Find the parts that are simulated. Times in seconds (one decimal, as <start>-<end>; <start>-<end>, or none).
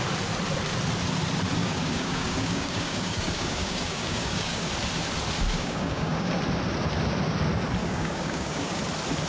1.6-4.7; 5.5-6.3; 7.8-8.8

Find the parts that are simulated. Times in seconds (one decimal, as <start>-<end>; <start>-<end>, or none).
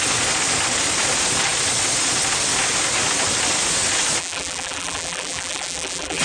4.2-6.2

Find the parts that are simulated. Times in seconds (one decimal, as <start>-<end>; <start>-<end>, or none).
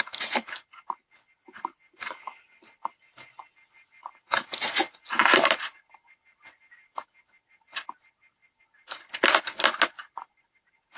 none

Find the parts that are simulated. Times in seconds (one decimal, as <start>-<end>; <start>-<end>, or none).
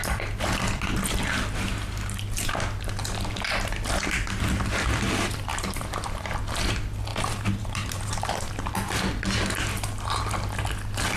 5.5-6.3; 7.1-8.5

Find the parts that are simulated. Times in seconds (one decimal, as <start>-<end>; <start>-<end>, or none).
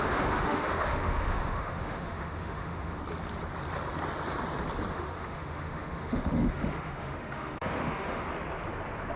0.0-3.0; 4.9-8.3